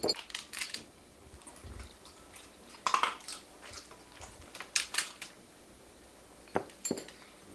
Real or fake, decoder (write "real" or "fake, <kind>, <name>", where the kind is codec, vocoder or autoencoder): real